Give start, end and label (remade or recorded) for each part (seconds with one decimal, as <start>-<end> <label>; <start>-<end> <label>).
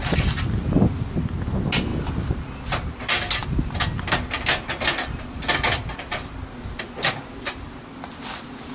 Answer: 0.0-8.7 recorded